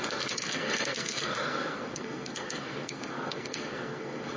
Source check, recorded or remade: remade